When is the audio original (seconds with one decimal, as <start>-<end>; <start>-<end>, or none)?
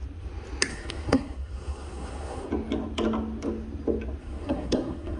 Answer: 0.0-0.7; 2.5-4.2